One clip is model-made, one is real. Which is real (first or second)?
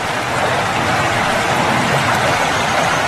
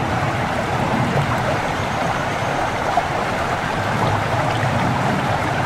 first